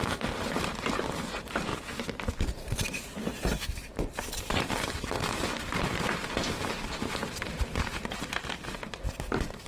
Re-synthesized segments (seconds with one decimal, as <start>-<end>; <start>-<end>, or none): 0.0-1.7; 2.3-9.7